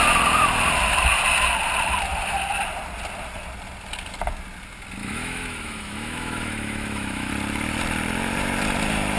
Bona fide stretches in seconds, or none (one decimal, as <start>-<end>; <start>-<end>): 0.0-5.0; 7.3-9.2